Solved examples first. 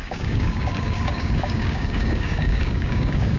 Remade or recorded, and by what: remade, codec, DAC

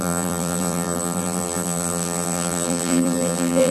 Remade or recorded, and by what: remade, vocoder, BigVGAN v2